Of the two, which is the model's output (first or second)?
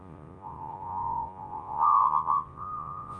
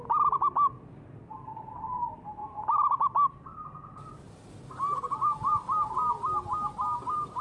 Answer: first